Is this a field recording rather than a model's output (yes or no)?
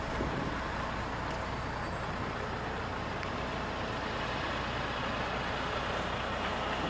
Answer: yes